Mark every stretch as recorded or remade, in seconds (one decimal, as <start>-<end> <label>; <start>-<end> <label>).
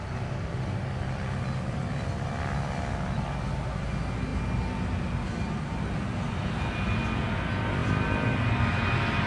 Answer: 0.0-9.3 recorded